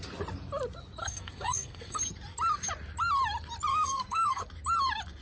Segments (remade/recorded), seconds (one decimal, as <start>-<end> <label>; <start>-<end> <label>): 0.0-1.0 recorded; 1.0-2.0 remade; 2.0-3.7 recorded; 3.7-4.4 remade; 4.4-5.2 recorded